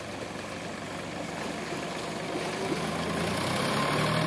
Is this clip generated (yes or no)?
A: no